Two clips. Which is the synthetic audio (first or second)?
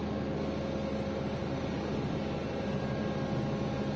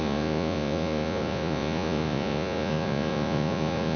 second